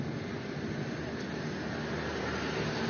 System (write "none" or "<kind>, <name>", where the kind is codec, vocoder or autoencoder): none